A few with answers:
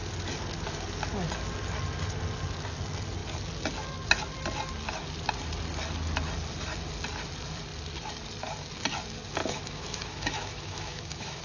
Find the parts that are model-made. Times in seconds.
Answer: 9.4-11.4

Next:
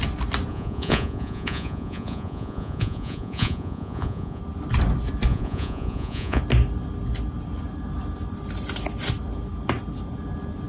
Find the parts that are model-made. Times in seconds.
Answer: 0.5-4.4; 5.3-6.4

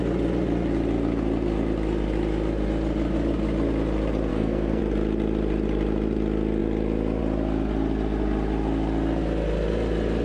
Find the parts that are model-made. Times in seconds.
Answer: 4.3-4.8

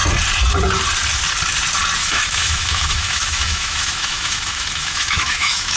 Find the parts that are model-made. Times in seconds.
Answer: 2.0-5.8

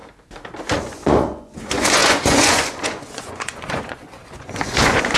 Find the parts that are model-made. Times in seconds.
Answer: 0.8-5.2

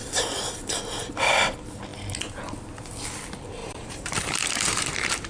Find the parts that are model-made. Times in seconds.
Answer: 0.0-0.7; 3.6-5.3

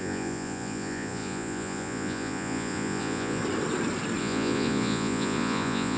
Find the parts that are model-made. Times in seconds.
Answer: 0.0-3.4; 4.2-6.0

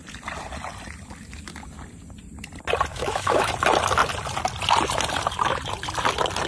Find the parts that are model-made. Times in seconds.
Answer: 2.9-3.5